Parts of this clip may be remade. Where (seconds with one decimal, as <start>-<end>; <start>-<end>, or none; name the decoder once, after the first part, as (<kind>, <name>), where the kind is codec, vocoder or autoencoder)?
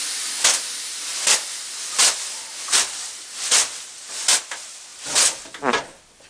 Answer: none